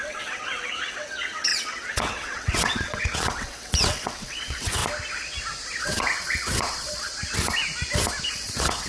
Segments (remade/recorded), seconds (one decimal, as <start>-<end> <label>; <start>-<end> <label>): 0.0-4.8 remade; 4.8-5.8 recorded; 5.8-7.1 remade; 7.1-8.3 recorded; 8.3-8.9 remade